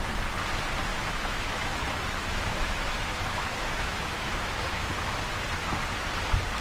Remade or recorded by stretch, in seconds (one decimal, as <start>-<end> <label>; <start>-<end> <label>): 0.0-0.9 recorded; 0.9-4.9 remade; 4.9-6.6 recorded